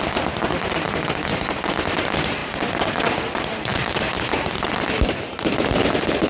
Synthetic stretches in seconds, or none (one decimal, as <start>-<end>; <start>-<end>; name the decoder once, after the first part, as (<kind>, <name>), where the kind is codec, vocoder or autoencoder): none